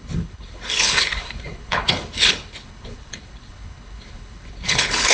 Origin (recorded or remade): remade